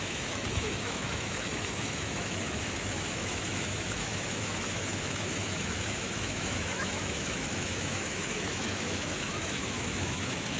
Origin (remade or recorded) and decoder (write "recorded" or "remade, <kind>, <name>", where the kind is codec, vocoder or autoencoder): remade, autoencoder, DAC-VAE